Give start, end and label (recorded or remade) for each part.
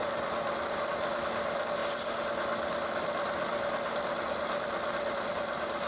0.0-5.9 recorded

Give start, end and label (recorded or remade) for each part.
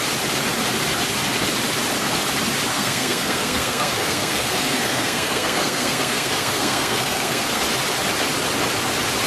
0.0-2.7 recorded; 2.7-7.6 remade; 7.6-9.3 recorded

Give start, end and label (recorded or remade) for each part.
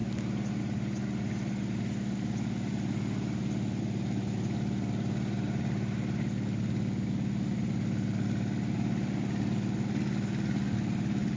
0.0-11.4 recorded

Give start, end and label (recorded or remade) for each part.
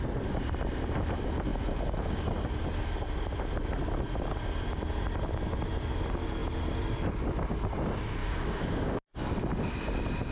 0.0-8.2 recorded; 8.2-9.3 remade; 9.3-10.3 recorded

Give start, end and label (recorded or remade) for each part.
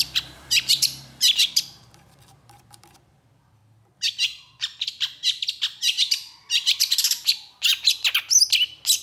0.0-3.6 remade; 3.6-4.1 recorded; 4.1-5.2 remade; 5.2-5.8 recorded; 5.8-6.8 remade; 6.8-9.0 recorded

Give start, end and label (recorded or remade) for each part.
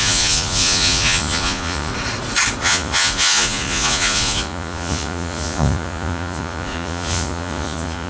0.0-1.9 remade; 1.9-2.6 recorded; 2.6-8.1 remade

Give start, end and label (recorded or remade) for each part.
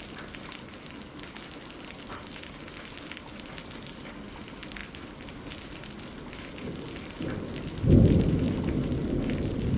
0.0-4.8 recorded; 4.8-6.3 remade; 6.3-9.8 recorded